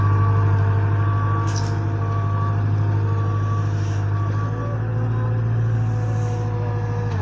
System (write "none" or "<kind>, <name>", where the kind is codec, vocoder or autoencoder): none